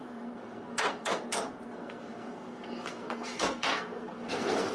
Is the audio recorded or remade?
remade